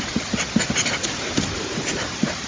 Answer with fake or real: real